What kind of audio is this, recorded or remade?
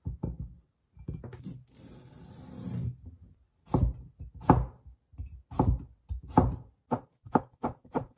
recorded